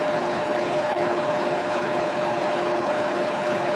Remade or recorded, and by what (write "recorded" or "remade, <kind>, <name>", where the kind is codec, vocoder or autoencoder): remade, codec, HILCodec